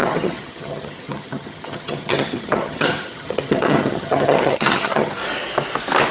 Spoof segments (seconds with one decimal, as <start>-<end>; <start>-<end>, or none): 0.0-5.2